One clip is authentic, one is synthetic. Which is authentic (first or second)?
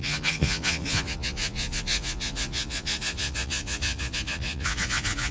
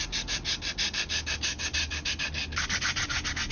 second